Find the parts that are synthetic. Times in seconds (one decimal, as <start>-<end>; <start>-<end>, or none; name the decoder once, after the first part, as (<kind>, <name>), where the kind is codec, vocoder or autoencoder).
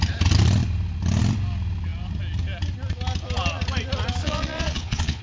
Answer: 4.2-5.2 (vocoder, Vocos)